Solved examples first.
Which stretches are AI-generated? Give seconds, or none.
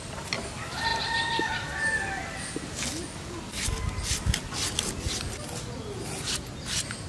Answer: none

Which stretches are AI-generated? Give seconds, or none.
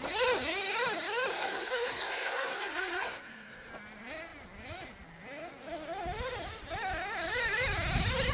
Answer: 1.3-3.7 (codec, SNAC)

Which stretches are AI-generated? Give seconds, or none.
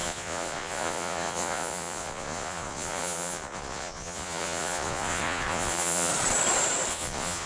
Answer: 0.0-6.1 (vocoder, Vocos); 6.9-7.5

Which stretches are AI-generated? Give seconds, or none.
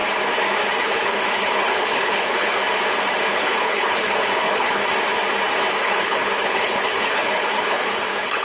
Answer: 0.8-2.6 (codec, HILCodec); 3.2-4.8; 5.8-8.4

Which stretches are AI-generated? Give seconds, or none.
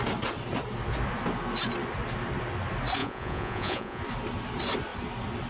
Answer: 3.0-4.0 (vocoder, Vocos)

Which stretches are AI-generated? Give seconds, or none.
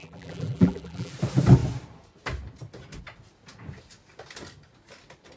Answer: 0.0-1.1 (vocoder, BigVGAN v2)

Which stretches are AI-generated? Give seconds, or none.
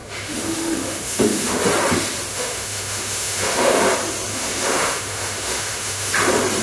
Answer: 0.0-1.6 (autoencoder, DAC-VAE); 2.3-3.8; 4.3-6.1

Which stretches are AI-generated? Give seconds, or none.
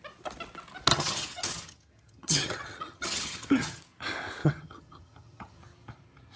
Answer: 0.9-3.8 (vocoder, HiFi-GAN); 4.4-5.6